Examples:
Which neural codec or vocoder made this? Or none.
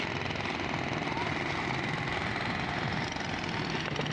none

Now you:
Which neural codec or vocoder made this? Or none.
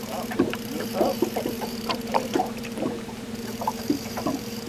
vocoder, BigVGAN v2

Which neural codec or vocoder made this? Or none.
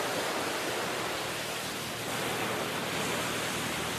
none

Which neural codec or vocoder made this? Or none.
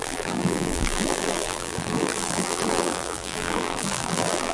vocoder, BigVGAN v2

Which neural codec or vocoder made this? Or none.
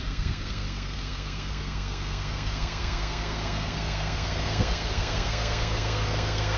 codec, SNAC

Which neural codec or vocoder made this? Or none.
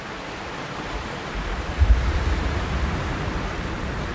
none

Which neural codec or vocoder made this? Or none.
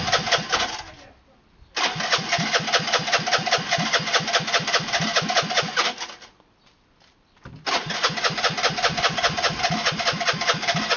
none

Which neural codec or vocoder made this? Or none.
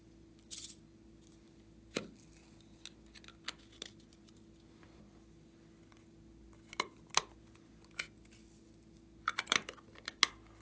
none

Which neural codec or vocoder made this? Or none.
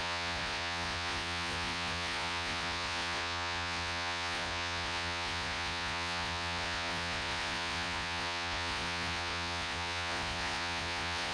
vocoder, Vocos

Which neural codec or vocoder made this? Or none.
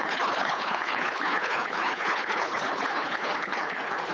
codec, HILCodec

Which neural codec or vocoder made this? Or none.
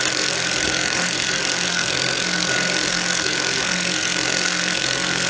codec, SNAC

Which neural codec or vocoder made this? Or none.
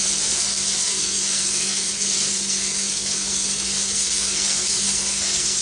codec, SNAC